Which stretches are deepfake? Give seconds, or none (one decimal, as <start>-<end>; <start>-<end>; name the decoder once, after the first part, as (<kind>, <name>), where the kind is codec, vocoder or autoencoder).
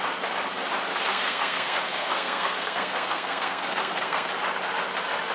1.1-4.3 (codec, SNAC)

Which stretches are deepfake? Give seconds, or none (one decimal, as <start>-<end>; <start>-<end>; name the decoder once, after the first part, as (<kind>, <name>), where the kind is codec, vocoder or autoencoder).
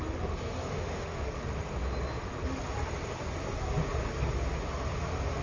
0.6-1.3 (autoencoder, DAC-VAE)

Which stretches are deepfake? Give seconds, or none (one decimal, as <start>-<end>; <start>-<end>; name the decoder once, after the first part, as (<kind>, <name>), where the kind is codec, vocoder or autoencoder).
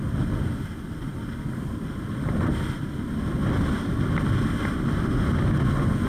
none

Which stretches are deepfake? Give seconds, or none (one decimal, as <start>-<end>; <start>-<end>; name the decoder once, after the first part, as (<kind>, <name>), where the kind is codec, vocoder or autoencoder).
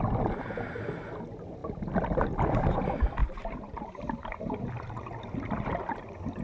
3.2-4.7 (vocoder, BigVGAN v2)